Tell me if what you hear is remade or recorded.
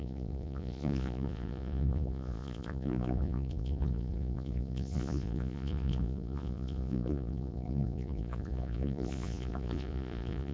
remade